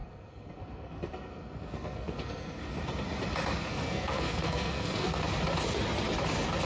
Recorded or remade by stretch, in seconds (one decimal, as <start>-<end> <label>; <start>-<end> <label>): 0.0-2.6 remade; 2.6-3.7 recorded; 3.7-5.2 remade; 5.2-6.7 recorded